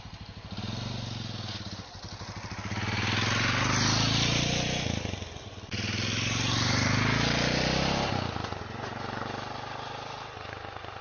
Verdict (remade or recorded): recorded